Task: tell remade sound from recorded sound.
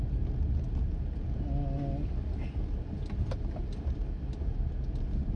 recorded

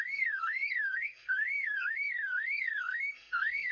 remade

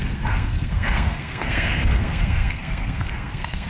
remade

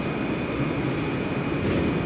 recorded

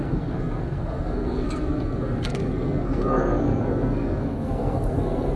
remade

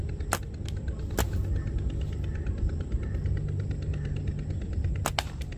recorded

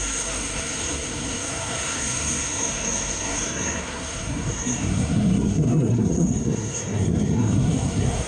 remade